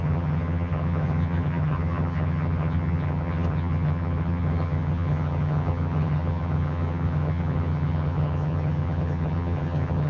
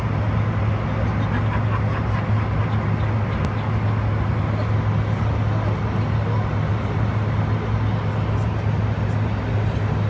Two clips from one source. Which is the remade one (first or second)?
first